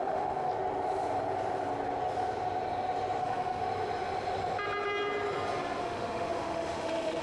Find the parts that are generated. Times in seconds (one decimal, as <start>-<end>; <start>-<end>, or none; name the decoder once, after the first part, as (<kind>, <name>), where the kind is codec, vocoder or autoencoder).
0.0-0.5 (autoencoder, DAC-VAE); 3.2-3.6; 5.8-7.2